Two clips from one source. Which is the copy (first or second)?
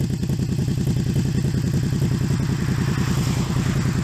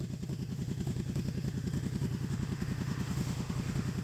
second